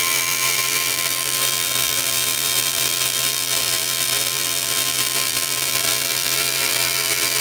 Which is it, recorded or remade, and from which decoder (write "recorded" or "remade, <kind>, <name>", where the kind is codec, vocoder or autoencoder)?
remade, vocoder, BigVGAN v2